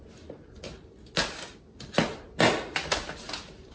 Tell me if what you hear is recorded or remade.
recorded